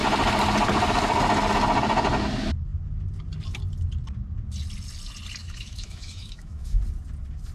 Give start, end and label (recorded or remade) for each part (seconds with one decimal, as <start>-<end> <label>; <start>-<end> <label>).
0.0-5.4 recorded; 5.4-6.8 remade; 6.8-7.5 recorded

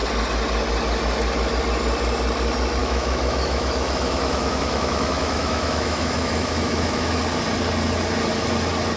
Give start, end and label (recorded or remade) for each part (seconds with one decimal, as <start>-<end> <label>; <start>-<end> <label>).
0.0-2.8 recorded; 2.8-7.2 remade; 7.2-9.0 recorded

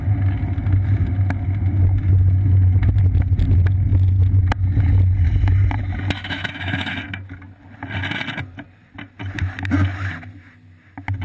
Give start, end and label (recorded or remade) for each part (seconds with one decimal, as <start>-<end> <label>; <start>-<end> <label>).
0.0-6.2 recorded; 6.2-7.0 remade; 7.0-11.2 recorded

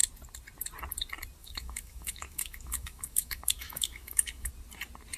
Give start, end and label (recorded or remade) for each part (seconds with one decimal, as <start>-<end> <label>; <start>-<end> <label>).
0.0-1.4 recorded; 1.4-4.5 remade; 4.5-5.2 recorded

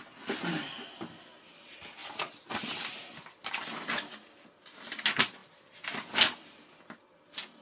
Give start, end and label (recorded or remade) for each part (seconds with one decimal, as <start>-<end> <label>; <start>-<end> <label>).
0.0-7.6 recorded